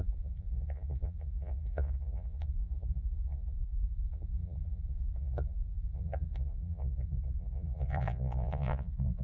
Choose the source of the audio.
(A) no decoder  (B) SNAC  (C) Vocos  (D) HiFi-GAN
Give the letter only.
C